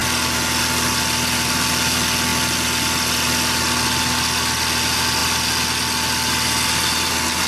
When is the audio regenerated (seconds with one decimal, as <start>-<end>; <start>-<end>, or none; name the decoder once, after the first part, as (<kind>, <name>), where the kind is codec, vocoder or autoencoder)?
none